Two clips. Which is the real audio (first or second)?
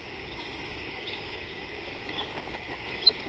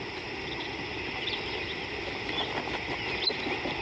second